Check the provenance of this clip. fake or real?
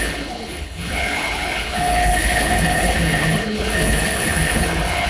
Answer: fake